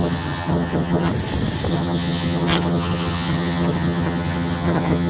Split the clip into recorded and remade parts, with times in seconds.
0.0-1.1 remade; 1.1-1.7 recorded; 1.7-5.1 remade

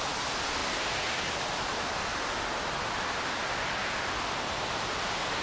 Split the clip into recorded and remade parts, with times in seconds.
0.0-5.4 recorded

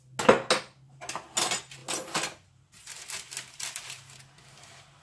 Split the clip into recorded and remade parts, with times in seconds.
0.0-5.0 recorded

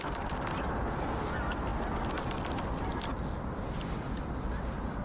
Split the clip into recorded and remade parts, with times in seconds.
0.0-5.0 recorded